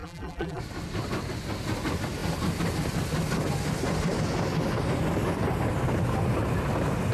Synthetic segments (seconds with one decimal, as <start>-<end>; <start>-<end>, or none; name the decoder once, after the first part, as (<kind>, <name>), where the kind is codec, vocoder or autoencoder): 0.0-0.6 (vocoder, BigVGAN v2)